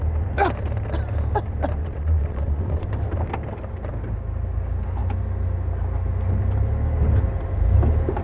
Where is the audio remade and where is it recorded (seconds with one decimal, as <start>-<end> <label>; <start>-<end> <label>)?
0.0-1.8 recorded; 1.8-2.9 remade; 2.9-8.2 recorded

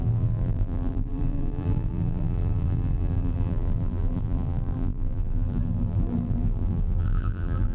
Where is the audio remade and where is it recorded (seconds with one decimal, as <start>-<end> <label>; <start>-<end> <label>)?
0.0-7.7 remade

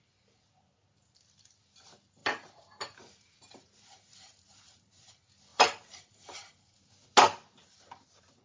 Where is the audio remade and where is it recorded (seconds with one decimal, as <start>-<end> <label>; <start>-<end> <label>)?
0.0-2.2 recorded; 2.2-5.1 remade; 5.1-5.5 recorded; 5.5-6.5 remade; 6.5-8.4 recorded